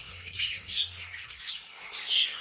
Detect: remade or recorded remade